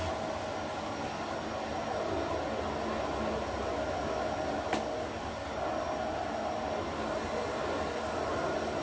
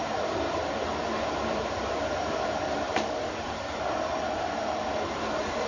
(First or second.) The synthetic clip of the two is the second